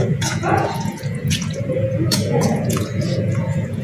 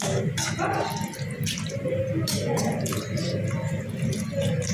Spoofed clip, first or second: first